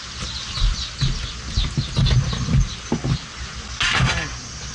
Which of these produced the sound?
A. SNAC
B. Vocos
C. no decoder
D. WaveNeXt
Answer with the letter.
C